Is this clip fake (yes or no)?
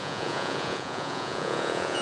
yes